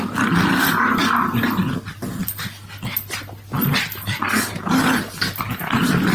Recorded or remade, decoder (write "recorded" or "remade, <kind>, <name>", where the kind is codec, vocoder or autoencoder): recorded